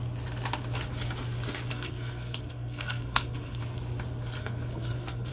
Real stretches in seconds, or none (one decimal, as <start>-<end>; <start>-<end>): 0.0-1.7; 3.6-4.4

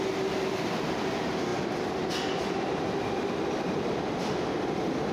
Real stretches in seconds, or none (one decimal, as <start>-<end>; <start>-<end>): 0.0-5.1

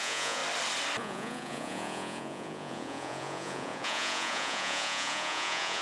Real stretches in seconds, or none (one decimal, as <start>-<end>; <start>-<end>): 0.4-1.0

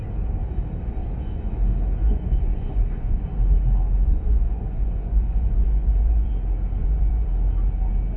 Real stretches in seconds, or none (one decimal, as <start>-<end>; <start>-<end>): 0.0-1.0; 1.5-2.0; 3.2-4.0; 6.3-6.8; 7.3-8.2

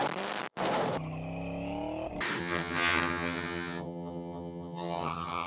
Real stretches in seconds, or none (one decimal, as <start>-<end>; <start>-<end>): 0.0-2.4